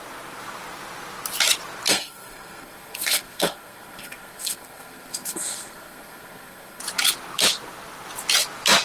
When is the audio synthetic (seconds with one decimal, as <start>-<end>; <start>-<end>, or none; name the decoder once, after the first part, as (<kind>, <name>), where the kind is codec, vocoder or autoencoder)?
1.9-6.8 (codec, SNAC)